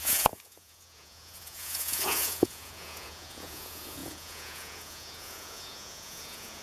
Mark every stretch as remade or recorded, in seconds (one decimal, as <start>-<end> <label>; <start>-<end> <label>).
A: 0.0-6.6 remade